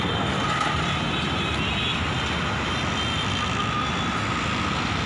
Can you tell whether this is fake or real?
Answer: real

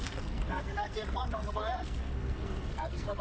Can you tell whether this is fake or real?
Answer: fake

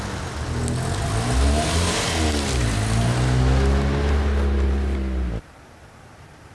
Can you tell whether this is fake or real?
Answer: real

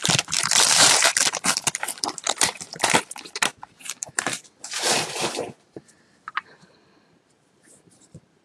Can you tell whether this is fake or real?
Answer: fake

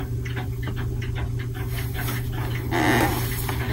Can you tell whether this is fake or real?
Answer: real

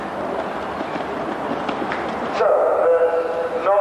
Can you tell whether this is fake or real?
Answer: real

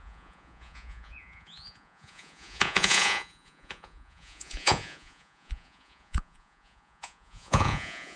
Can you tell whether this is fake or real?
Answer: fake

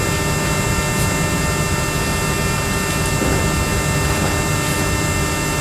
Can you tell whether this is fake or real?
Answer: real